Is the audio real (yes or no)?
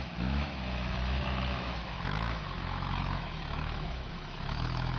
no